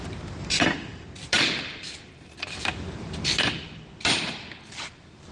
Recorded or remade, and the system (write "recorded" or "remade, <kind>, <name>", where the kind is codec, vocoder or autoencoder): recorded